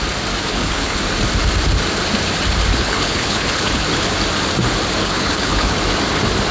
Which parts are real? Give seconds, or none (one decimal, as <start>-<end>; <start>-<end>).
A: 0.0-0.5; 1.0-2.7; 4.1-5.0; 5.8-6.5